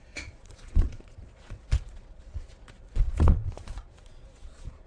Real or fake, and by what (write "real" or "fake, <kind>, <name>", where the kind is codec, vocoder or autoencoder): fake, vocoder, Vocos